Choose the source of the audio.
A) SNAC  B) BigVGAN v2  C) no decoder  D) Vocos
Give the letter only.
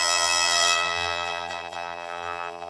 B